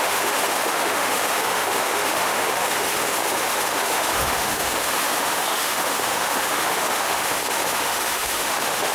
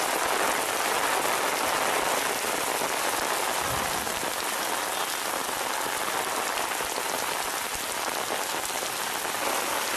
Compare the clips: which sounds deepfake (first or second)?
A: first